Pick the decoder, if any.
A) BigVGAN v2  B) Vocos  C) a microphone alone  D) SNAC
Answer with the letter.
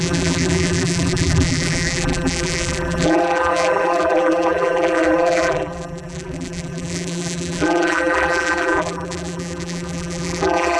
A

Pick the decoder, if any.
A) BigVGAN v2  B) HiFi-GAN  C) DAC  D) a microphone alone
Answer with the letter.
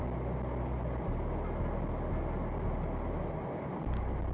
D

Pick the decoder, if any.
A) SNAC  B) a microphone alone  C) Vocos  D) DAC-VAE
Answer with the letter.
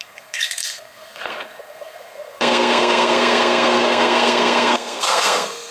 A